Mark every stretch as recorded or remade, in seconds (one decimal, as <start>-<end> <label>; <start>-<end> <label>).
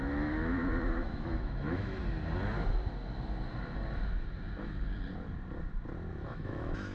0.0-2.0 remade; 2.0-6.1 recorded; 6.1-6.9 remade